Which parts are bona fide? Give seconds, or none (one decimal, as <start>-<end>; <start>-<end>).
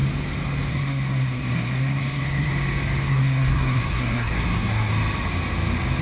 0.0-0.7; 2.5-3.1; 4.9-6.0